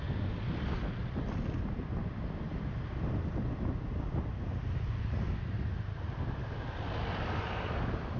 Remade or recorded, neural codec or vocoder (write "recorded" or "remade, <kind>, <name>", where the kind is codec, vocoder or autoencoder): recorded